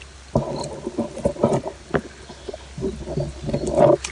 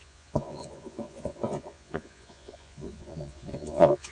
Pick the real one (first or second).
first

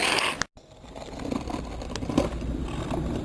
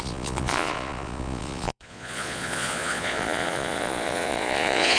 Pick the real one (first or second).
first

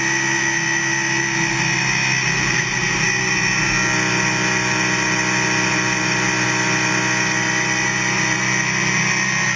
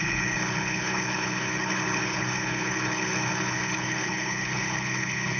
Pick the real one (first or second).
first